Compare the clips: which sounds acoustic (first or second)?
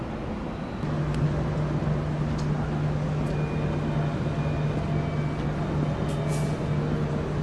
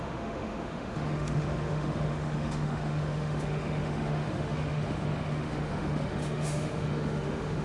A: first